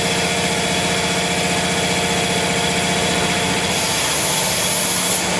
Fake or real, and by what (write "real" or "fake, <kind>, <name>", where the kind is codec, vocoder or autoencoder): real